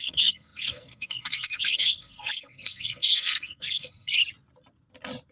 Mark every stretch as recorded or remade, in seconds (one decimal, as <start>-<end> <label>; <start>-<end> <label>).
0.0-4.2 remade; 4.2-5.3 recorded